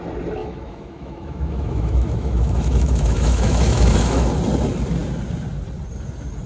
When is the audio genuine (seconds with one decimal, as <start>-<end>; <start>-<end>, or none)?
0.0-0.4; 4.3-6.5